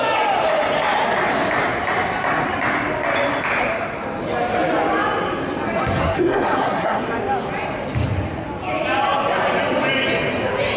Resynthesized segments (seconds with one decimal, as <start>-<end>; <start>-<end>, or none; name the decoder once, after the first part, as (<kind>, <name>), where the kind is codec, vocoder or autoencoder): 6.0-7.1 (codec, SNAC)